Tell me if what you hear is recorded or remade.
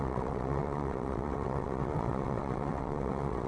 remade